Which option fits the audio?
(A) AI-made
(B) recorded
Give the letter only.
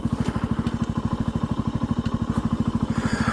B